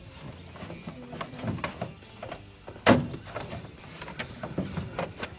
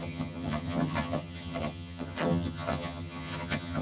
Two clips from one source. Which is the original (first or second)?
first